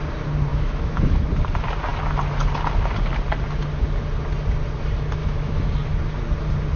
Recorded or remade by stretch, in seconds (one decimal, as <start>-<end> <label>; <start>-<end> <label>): 0.0-0.5 recorded; 0.5-1.3 remade; 1.3-5.2 recorded; 5.2-5.7 remade; 5.7-6.8 recorded